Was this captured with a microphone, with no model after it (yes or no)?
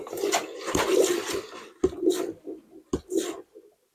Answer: yes